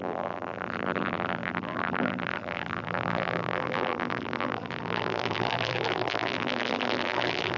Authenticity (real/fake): fake